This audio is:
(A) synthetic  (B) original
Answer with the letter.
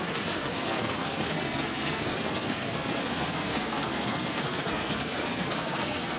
A